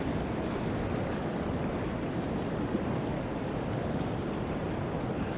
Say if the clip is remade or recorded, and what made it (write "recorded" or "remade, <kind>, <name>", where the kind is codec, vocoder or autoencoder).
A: recorded